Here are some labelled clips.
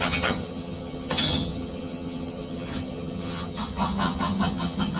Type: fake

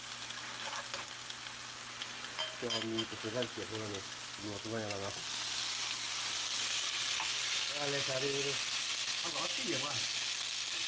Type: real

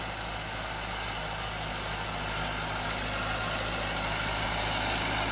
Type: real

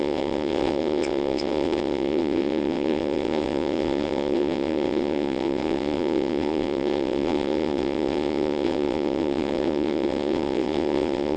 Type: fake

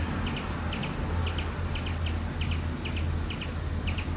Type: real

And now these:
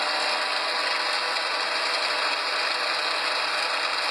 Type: real